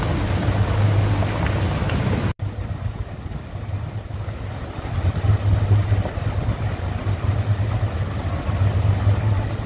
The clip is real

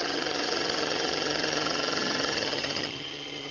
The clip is fake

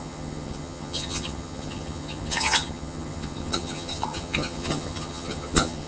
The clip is fake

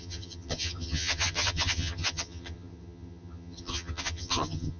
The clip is fake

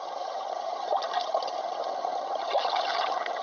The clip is fake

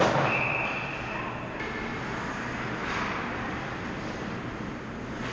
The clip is real